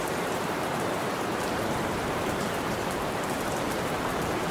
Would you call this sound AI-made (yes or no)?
yes